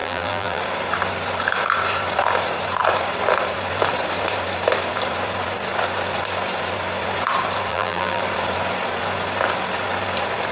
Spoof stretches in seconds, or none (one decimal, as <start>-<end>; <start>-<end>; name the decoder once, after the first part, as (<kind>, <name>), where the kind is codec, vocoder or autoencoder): 0.0-0.6 (vocoder, BigVGAN v2); 7.7-8.2